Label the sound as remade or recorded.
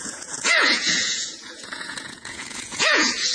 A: remade